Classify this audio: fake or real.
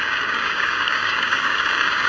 fake